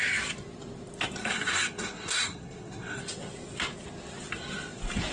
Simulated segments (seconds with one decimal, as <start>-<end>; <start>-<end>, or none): 1.2-3.0